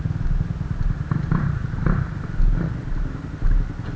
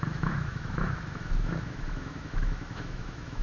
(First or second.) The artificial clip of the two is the second